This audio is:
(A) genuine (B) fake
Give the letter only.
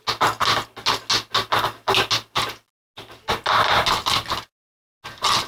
A